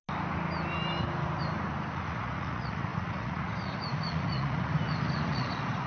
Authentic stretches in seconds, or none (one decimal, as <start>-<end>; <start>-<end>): 0.0-1.9